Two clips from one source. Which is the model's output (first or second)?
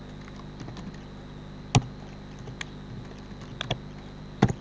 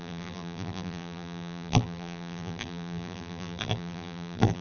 second